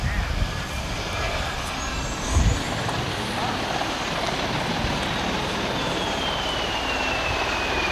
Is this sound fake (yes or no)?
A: no